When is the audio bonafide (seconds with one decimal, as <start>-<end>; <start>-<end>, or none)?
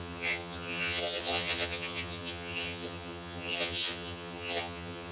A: none